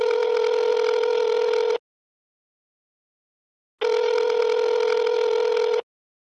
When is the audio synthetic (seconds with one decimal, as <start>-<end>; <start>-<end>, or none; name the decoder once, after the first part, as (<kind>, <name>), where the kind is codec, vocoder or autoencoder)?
none